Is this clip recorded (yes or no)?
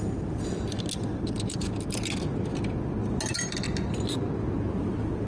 yes